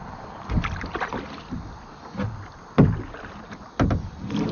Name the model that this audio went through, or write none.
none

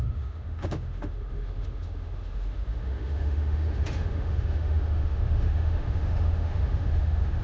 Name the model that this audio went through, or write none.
autoencoder, DAC-VAE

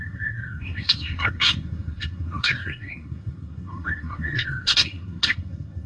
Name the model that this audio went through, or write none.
codec, SNAC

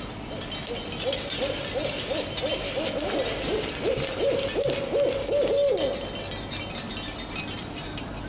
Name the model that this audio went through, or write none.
none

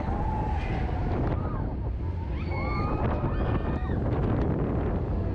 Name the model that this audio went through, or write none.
none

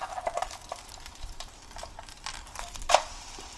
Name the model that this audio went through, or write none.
vocoder, BigVGAN v2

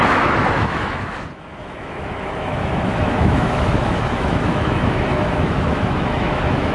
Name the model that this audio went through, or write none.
autoencoder, DAC-VAE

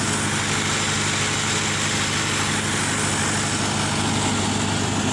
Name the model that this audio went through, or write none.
none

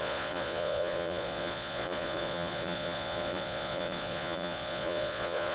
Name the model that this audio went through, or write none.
vocoder, Vocos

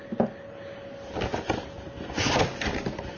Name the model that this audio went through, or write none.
none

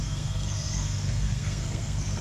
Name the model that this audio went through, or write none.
codec, SNAC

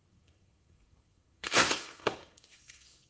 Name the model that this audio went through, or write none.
codec, SNAC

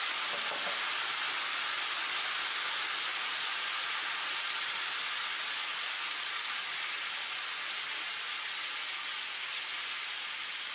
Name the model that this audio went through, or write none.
none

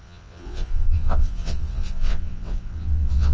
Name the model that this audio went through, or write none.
vocoder, WaveNeXt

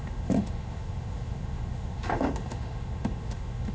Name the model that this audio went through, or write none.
autoencoder, DAC-VAE